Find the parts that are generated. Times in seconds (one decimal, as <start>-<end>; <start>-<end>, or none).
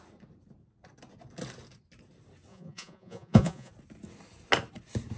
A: 2.5-3.7